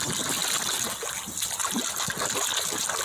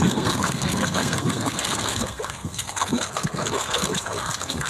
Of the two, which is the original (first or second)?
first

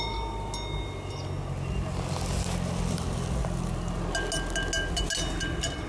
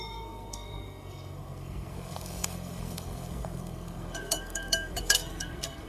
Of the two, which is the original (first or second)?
first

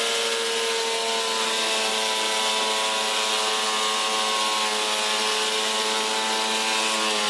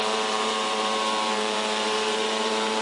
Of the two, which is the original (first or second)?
first